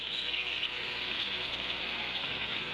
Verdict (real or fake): fake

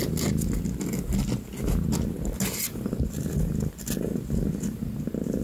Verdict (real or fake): real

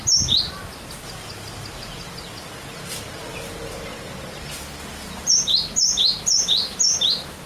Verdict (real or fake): real